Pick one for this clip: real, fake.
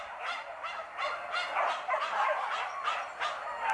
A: real